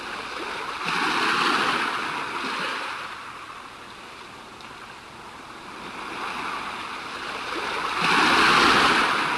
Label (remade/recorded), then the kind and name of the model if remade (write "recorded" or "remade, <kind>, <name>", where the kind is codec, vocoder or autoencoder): recorded